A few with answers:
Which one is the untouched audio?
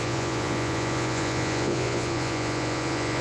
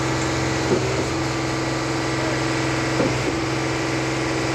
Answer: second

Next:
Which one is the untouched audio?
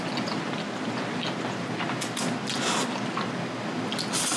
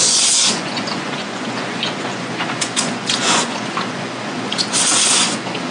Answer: first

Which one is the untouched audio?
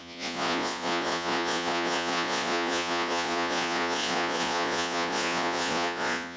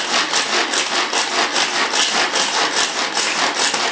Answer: second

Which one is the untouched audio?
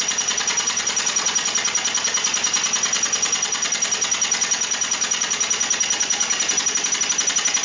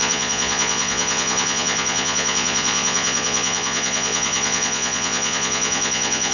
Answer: first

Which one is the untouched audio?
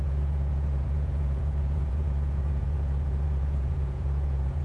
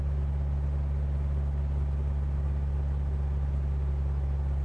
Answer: second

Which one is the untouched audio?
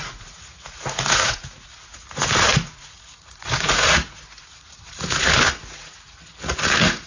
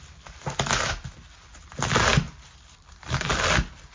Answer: second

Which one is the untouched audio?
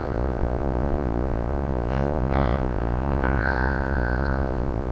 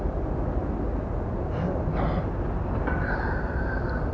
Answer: second